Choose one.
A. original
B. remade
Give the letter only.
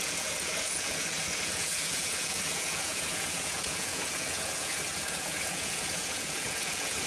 B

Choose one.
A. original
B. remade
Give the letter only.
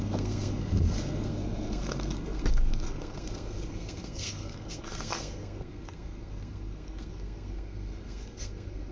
B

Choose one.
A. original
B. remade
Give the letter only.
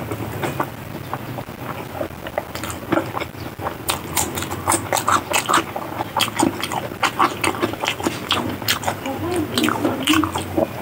A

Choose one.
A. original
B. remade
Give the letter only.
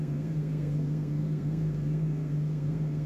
B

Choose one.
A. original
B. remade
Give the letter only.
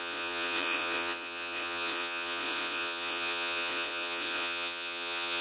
B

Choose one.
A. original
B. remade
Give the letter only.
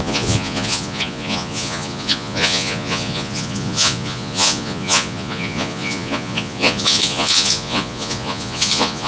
B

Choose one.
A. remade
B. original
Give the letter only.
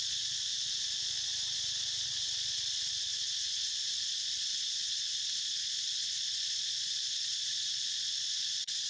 A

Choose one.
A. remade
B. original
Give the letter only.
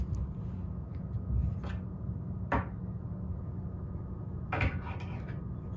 B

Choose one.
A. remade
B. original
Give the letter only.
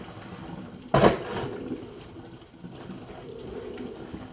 B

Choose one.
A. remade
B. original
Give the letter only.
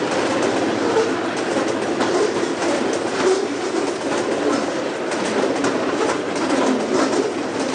B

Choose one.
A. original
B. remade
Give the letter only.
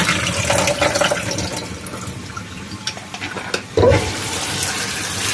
A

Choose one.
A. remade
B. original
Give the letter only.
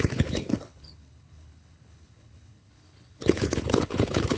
A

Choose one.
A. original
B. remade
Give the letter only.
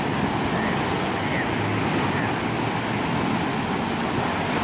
A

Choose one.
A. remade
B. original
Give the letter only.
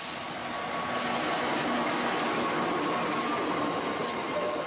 B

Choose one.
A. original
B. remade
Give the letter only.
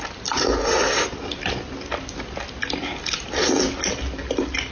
A